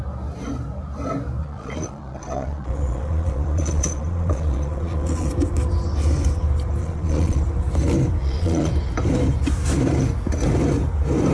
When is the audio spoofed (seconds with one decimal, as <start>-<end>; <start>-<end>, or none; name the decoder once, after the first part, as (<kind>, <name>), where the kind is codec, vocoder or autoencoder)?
1.4-5.3 (vocoder, Vocos); 6.8-7.4; 8.2-8.7